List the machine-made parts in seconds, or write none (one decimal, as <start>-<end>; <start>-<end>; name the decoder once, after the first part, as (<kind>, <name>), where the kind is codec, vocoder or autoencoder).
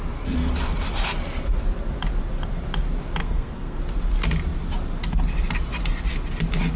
3.2-3.8 (codec, SNAC)